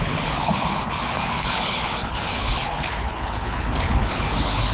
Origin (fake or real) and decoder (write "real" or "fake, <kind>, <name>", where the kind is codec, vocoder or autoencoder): fake, codec, HILCodec